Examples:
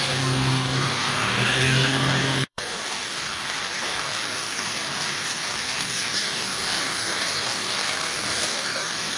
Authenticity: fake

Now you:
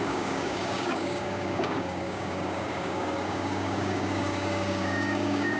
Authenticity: fake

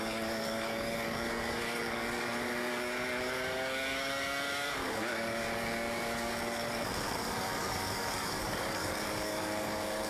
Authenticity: fake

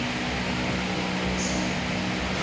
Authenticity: real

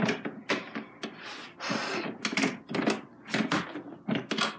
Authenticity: real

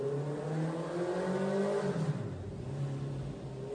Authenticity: real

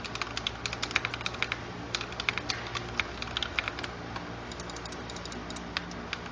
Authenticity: real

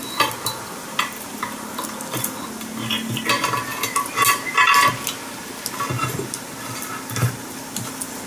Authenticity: real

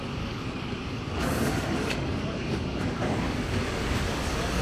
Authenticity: fake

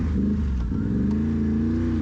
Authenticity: real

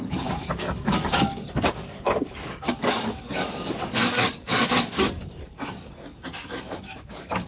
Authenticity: fake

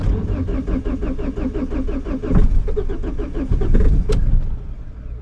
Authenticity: real